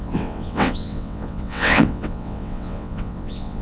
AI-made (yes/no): yes